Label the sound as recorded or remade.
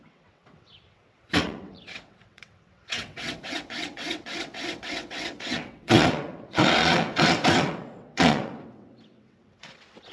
remade